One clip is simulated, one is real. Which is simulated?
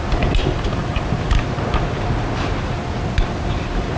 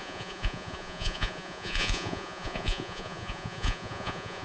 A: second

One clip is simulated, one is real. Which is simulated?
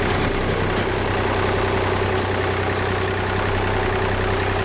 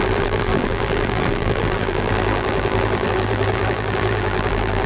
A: second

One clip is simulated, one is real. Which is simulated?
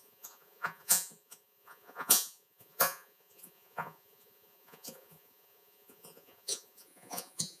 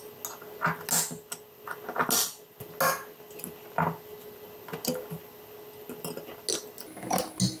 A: first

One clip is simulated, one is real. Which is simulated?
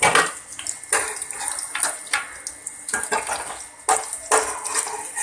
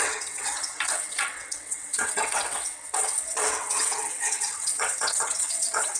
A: second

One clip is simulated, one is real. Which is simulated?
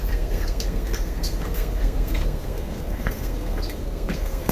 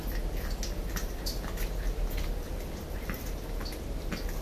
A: first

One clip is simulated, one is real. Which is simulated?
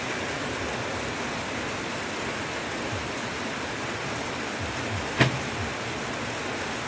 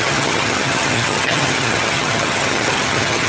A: second